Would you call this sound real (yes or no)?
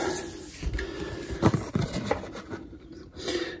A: yes